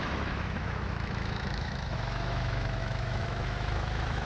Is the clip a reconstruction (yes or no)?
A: yes